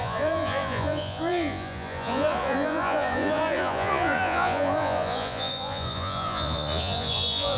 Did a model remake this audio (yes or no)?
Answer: yes